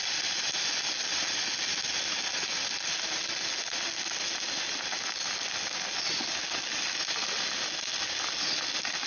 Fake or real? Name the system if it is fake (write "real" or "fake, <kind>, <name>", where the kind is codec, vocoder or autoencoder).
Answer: real